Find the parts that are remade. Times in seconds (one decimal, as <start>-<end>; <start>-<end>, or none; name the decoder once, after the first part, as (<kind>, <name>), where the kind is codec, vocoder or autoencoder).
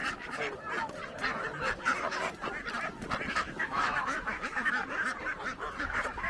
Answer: 3.3-4.8 (autoencoder, DAC-VAE); 5.8-6.3